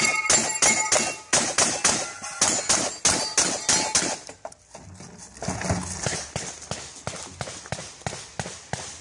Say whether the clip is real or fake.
real